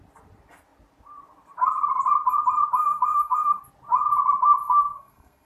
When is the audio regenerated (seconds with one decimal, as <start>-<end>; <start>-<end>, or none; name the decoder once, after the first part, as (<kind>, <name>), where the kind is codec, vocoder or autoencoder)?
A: 2.8-3.6 (codec, SNAC); 4.6-5.5